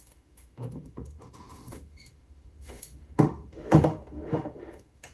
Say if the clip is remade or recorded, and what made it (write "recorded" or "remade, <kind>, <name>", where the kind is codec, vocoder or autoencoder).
remade, autoencoder, DAC-VAE